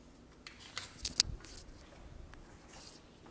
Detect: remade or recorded recorded